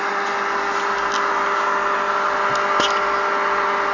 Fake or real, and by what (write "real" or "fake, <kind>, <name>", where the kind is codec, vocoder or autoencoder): real